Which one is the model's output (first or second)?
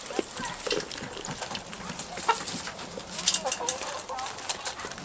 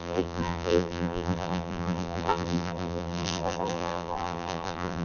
second